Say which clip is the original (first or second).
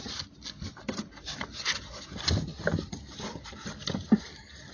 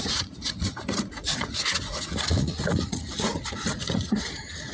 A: first